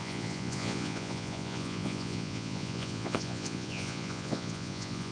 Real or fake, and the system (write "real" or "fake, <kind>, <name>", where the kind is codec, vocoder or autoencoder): fake, vocoder, Vocos